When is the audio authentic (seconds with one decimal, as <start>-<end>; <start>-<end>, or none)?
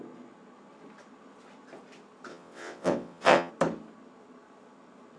0.0-2.3; 3.5-5.2